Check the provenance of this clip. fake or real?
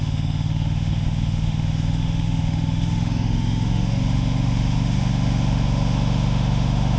fake